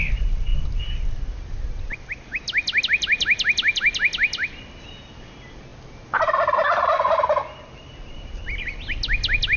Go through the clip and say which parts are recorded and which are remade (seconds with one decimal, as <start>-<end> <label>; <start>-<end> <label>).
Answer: 0.0-9.6 recorded